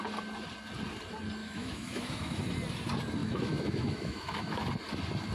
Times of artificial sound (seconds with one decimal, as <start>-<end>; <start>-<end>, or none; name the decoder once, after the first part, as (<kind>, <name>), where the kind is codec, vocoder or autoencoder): 1.4-2.4 (autoencoder, DAC-VAE); 3.2-4.7